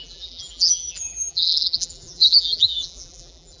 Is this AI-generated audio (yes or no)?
yes